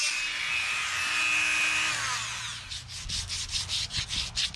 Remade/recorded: recorded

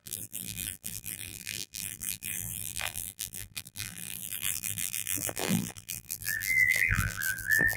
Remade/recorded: remade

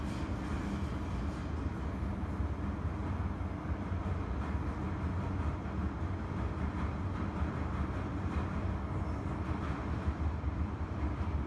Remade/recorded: recorded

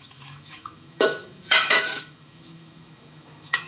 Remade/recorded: remade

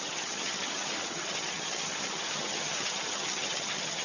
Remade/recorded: remade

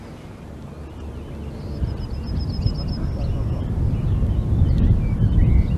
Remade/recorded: recorded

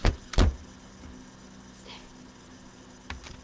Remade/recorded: recorded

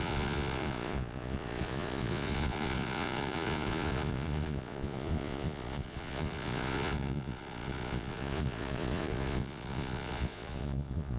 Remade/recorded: remade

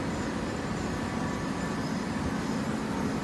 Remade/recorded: recorded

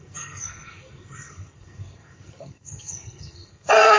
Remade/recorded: remade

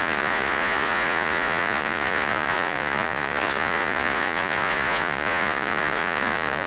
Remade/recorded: remade